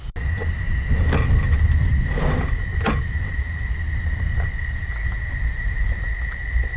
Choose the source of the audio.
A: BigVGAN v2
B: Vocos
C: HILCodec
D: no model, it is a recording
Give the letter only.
D